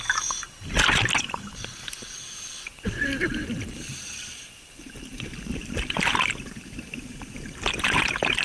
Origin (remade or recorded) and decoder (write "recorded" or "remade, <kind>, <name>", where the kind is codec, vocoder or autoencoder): recorded